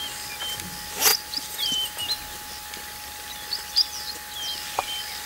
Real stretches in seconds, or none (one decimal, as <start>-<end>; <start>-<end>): 0.0-1.1; 2.0-5.2